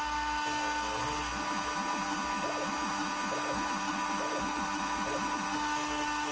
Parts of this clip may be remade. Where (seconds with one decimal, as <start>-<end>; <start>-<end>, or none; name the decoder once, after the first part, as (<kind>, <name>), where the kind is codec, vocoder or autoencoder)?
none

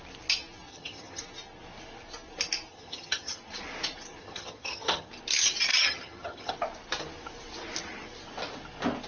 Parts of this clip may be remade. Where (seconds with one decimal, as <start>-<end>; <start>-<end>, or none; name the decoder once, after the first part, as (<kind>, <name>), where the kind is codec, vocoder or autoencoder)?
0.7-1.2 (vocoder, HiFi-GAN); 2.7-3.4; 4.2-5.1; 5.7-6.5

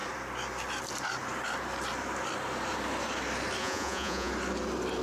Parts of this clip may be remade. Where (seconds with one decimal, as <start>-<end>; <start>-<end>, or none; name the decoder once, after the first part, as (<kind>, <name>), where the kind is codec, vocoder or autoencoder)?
3.6-4.3 (vocoder, Vocos)

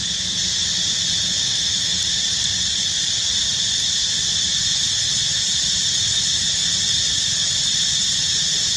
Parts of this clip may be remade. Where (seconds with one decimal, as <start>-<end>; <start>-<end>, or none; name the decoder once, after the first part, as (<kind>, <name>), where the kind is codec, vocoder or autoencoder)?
1.4-2.0 (autoencoder, DAC-VAE)

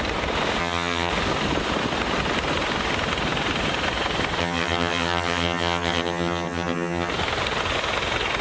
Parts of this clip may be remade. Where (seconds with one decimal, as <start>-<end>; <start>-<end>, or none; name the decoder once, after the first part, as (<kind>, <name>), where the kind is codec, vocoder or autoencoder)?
0.6-1.1 (vocoder, HiFi-GAN); 4.4-7.1

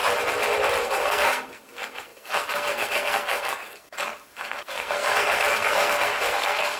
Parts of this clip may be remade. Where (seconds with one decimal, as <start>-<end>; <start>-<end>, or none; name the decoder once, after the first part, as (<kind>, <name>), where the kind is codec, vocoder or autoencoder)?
0.8-6.8 (codec, SNAC)

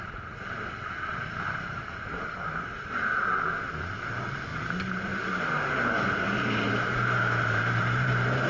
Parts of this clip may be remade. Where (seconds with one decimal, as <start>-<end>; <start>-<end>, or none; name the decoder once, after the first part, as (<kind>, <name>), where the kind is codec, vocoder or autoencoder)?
4.5-8.5 (vocoder, BigVGAN v2)

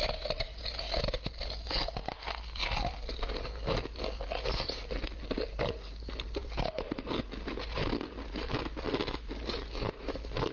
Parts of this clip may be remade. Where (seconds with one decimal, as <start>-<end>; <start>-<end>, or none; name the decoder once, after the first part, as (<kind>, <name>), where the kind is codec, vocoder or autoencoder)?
none